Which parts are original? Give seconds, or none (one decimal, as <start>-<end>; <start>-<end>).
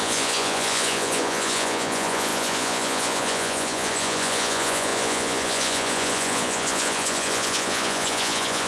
none